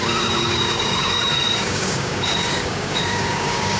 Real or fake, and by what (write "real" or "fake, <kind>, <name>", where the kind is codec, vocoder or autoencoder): fake, codec, DAC